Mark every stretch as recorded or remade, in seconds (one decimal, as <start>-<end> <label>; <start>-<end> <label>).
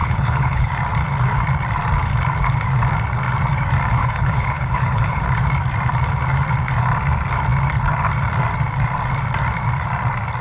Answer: 0.0-0.7 remade; 0.7-4.0 recorded; 4.0-5.2 remade; 5.2-10.4 recorded